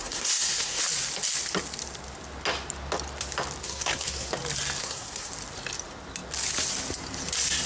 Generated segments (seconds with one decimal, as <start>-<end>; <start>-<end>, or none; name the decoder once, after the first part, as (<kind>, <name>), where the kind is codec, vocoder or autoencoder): 0.0-0.8 (codec, SNAC); 3.6-4.3; 4.8-5.3